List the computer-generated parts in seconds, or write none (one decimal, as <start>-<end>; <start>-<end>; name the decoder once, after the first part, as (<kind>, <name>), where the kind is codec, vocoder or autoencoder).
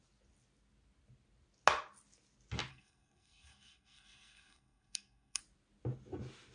2.7-5.4 (codec, SNAC)